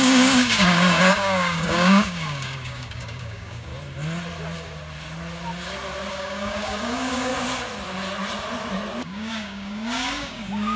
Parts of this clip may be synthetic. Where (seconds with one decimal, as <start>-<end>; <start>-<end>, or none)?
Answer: 0.0-3.7; 6.1-7.3; 9.0-10.8